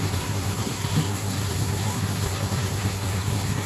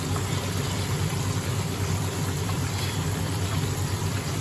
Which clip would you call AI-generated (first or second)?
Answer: first